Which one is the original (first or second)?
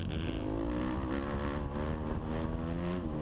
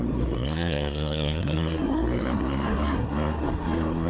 first